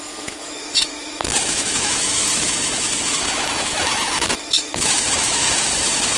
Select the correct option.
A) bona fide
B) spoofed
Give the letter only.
B